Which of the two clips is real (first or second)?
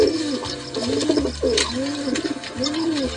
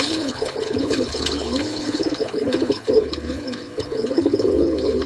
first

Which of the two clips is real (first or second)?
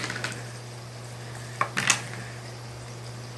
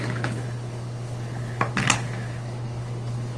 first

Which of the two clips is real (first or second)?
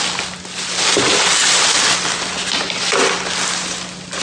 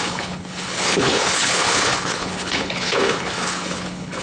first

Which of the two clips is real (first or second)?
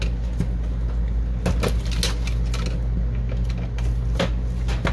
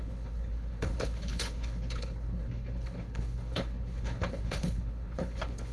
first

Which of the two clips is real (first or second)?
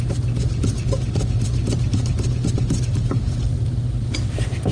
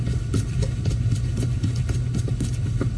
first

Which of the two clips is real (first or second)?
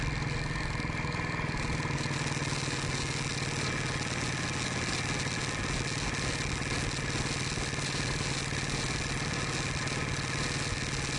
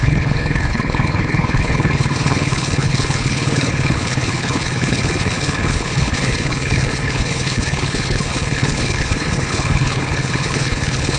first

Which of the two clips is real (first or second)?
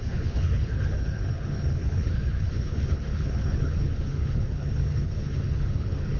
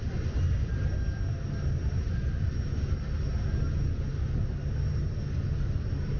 second